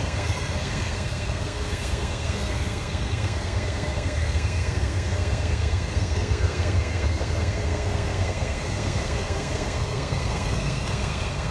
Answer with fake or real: fake